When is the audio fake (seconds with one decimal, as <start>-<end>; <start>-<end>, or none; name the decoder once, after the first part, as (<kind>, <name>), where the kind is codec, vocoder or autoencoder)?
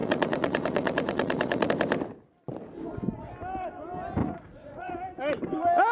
0.0-1.7 (vocoder, Vocos); 4.2-4.9